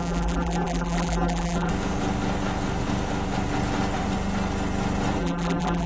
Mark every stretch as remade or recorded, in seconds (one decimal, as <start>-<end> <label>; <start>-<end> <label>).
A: 0.0-1.7 remade; 1.7-5.2 recorded; 5.2-5.9 remade